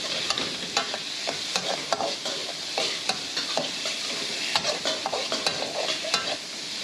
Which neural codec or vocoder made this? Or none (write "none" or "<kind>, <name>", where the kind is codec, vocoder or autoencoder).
none